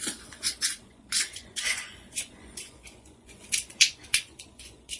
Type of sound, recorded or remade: remade